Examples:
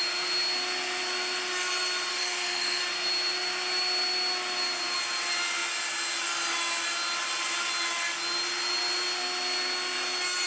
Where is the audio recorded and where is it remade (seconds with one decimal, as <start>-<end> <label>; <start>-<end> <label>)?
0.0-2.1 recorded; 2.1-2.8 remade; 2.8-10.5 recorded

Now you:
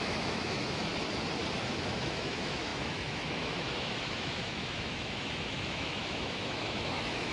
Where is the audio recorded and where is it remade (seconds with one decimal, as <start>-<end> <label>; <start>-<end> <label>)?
0.0-0.9 remade; 0.9-1.6 recorded; 1.6-7.3 remade

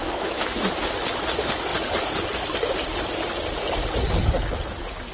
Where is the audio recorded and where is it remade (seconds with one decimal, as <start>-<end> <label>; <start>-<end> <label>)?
0.0-0.7 remade; 0.7-5.1 recorded

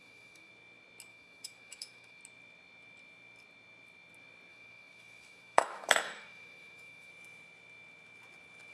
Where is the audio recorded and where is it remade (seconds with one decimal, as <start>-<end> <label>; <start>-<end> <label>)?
0.0-0.5 remade; 0.5-1.1 recorded; 1.1-2.2 remade; 2.2-4.5 recorded; 4.5-7.1 remade; 7.1-8.7 recorded